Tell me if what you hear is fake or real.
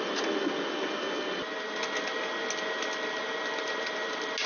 real